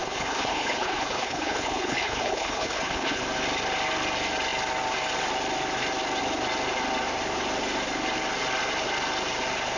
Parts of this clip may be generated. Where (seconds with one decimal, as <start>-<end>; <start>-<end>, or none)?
0.0-3.2